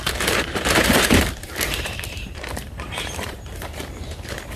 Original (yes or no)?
no